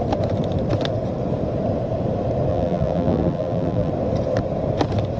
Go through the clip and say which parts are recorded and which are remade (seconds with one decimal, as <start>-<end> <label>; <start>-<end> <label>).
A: 0.0-2.5 recorded; 2.5-3.9 remade; 3.9-5.2 recorded